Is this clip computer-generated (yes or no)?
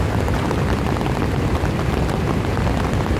no